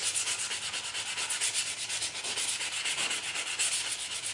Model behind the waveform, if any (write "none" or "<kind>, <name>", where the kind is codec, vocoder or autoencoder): none